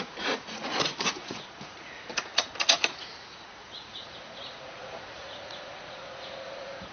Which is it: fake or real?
fake